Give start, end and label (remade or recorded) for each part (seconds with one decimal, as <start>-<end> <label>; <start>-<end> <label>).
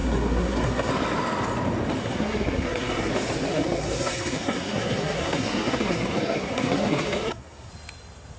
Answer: 0.0-0.9 remade; 0.9-2.0 recorded; 2.0-3.1 remade; 3.1-3.5 recorded; 3.5-7.7 remade; 7.7-8.4 recorded